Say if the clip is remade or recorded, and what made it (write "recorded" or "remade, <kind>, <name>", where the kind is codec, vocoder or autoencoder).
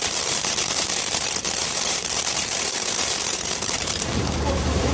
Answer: remade, vocoder, BigVGAN v2